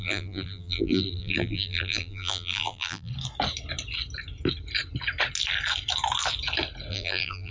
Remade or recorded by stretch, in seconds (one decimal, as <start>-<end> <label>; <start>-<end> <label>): 0.0-3.1 remade; 3.1-6.9 recorded; 6.9-7.5 remade